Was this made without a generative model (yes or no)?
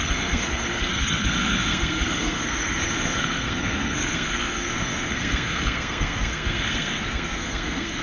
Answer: no